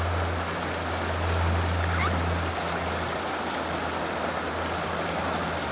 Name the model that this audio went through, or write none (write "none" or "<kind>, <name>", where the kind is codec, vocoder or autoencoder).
none